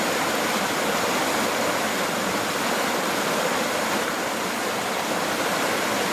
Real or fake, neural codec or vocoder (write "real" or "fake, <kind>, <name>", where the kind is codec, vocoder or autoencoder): real